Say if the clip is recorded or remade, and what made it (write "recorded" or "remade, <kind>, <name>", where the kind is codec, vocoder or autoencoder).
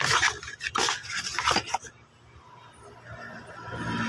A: recorded